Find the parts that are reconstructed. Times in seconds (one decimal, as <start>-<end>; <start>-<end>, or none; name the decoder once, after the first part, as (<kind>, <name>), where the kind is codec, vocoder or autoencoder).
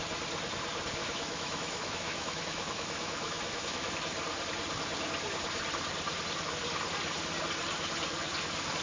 1.0-3.9 (autoencoder, DAC-VAE)